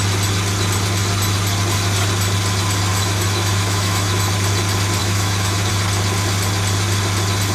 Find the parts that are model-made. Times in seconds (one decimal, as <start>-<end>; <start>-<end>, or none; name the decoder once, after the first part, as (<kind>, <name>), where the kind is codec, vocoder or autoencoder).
2.9-4.2 (autoencoder, DAC-VAE); 5.0-5.7